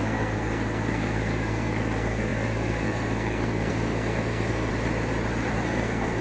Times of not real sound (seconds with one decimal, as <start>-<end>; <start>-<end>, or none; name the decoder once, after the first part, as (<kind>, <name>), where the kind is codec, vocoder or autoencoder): 0.0-4.7 (codec, SNAC); 5.5-6.2